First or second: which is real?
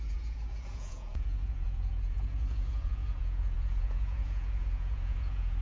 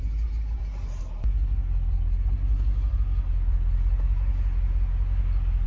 second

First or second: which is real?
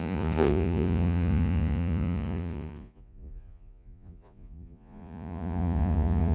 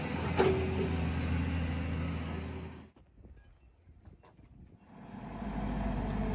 second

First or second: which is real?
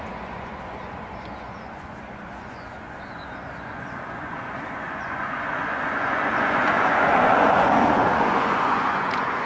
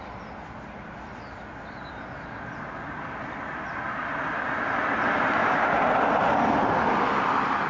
second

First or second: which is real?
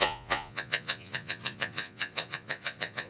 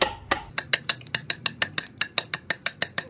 second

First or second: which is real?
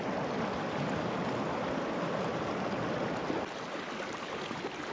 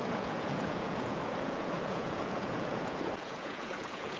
first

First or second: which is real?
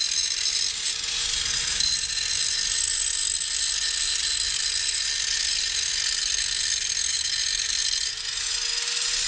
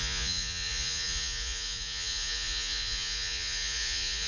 first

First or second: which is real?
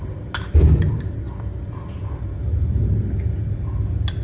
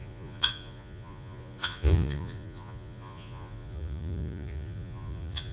first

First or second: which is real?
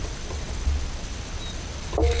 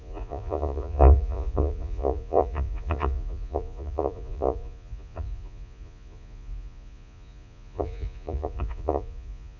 first